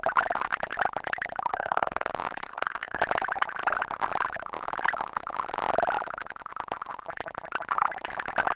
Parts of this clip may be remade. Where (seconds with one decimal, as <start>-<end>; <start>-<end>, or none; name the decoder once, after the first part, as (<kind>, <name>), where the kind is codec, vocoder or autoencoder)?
1.5-2.1 (codec, SNAC); 2.5-3.0